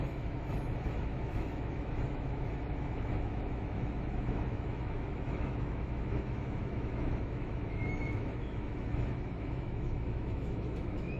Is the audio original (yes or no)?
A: no